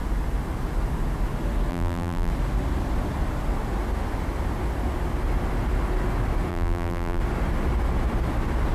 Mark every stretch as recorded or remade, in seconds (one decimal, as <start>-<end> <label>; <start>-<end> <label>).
0.0-1.7 recorded; 1.7-2.3 remade; 2.3-6.5 recorded; 6.5-7.2 remade; 7.2-8.7 recorded